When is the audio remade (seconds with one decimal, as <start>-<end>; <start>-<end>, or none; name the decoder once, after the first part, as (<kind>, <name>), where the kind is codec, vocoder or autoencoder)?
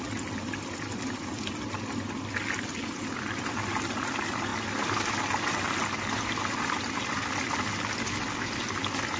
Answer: none